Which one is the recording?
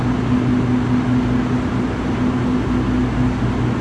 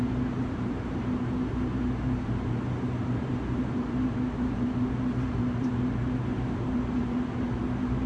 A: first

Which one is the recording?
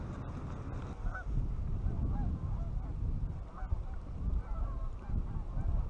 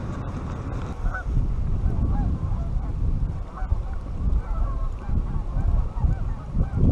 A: first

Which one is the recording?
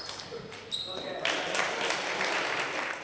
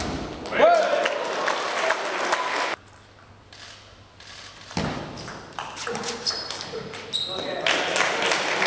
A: second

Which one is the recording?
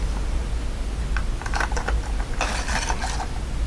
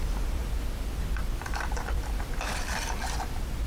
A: first